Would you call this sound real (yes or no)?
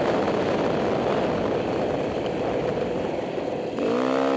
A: yes